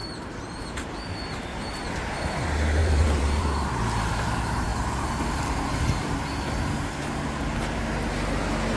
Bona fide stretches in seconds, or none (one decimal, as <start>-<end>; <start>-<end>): 1.1-2.8; 3.8-8.8